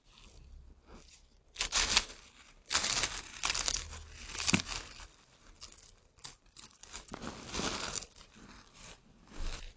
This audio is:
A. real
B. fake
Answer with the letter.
A